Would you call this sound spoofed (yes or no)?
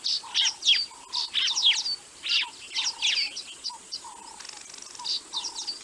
no